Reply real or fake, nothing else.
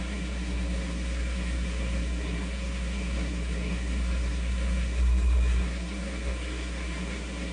fake